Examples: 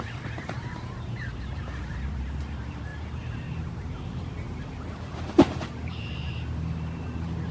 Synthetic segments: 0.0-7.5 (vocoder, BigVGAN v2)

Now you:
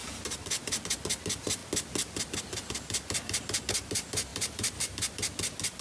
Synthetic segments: 0.0-0.8 (vocoder, BigVGAN v2); 4.3-4.8

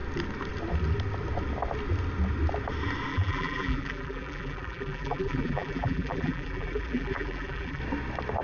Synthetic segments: 3.1-7.8 (vocoder, BigVGAN v2)

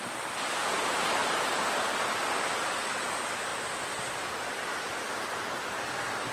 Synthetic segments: 0.0-4.7 (vocoder, BigVGAN v2); 5.3-6.3

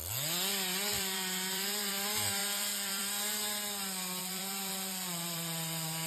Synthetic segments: 0.9-1.9 (vocoder, BigVGAN v2); 2.4-3.0; 4.2-6.1